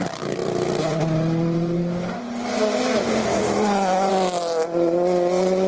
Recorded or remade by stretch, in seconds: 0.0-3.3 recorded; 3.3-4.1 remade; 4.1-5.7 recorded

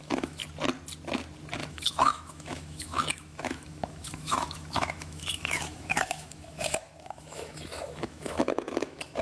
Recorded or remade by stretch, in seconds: 0.0-0.4 remade; 0.4-1.7 recorded; 1.7-9.2 remade

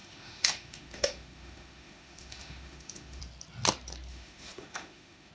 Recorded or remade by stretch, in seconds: 0.0-3.2 remade; 3.2-4.1 recorded; 4.1-5.3 remade

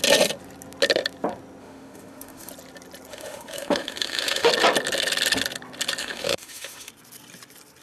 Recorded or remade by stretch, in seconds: 0.0-1.6 recorded; 1.6-2.5 remade; 2.5-3.1 recorded; 3.1-4.5 remade; 4.5-6.0 recorded; 6.0-6.9 remade; 6.9-7.8 recorded